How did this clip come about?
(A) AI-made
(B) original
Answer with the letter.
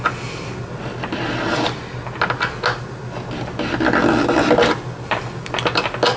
B